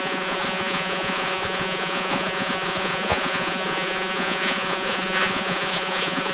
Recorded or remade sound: remade